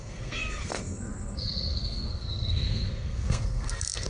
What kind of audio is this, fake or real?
fake